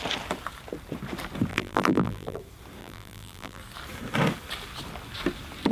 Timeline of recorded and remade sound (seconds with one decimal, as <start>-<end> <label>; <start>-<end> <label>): 0.0-1.5 recorded; 1.5-2.4 remade; 2.4-2.8 recorded; 2.8-3.6 remade; 3.6-5.7 recorded